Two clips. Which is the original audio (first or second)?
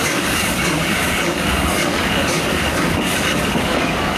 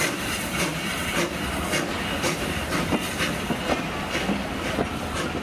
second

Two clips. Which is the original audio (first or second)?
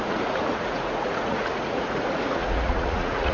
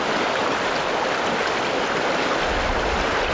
second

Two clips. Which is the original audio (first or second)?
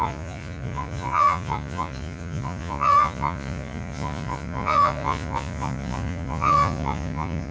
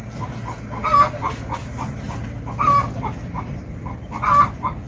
second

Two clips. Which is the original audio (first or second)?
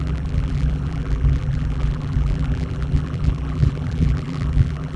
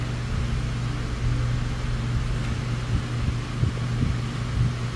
second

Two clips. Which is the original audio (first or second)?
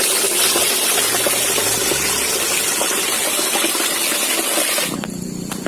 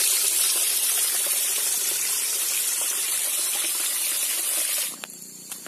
first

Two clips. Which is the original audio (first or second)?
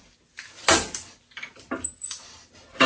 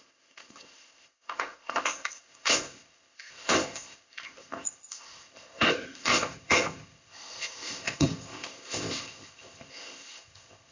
first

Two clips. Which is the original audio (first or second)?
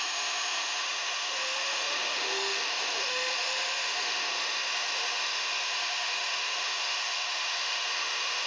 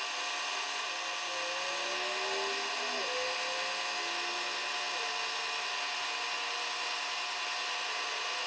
second